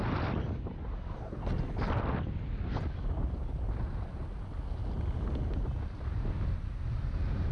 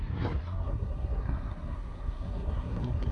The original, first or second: first